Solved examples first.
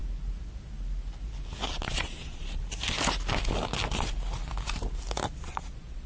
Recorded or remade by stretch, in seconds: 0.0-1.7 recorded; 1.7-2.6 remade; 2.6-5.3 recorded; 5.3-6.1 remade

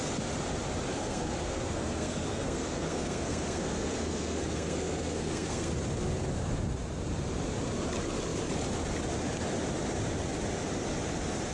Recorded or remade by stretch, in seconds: 0.0-0.9 recorded; 0.9-5.7 remade; 5.7-11.5 recorded

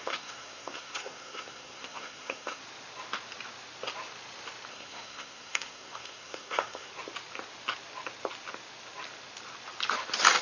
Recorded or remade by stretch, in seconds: 0.0-2.6 remade; 2.6-4.7 recorded; 4.7-6.9 remade; 6.9-10.4 recorded

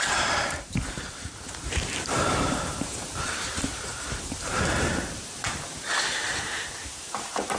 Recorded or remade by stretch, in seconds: 0.0-7.6 remade